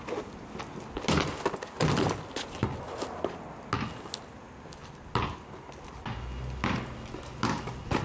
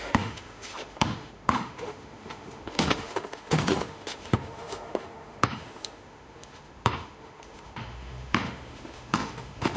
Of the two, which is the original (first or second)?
first